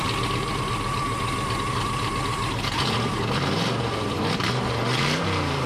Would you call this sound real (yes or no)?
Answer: no